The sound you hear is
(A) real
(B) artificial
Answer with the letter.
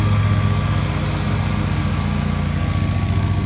A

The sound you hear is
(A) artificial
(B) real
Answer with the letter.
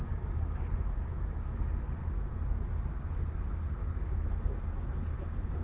B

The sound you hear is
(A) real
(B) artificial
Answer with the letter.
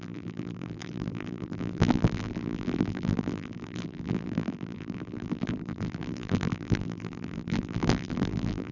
B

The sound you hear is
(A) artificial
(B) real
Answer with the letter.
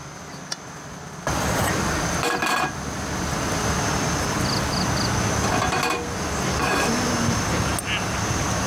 B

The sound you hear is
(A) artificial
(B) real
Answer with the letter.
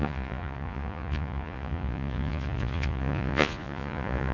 A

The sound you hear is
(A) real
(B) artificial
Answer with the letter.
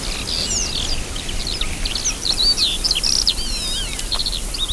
A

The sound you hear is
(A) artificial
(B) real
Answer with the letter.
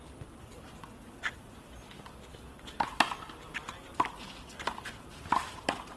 B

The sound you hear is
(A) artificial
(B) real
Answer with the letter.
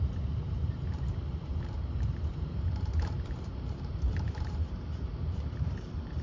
A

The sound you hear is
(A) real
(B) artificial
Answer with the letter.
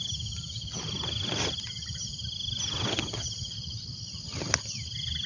A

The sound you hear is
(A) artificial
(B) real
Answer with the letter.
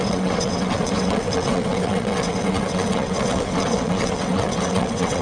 A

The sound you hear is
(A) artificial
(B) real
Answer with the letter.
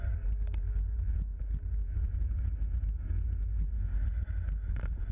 B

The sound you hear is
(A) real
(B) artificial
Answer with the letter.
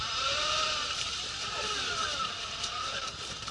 B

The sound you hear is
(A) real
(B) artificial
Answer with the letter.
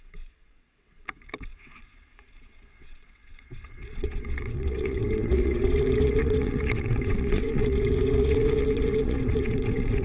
B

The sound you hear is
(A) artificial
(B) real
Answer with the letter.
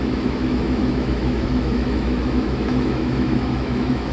A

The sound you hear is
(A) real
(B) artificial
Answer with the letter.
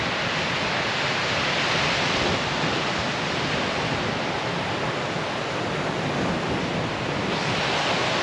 A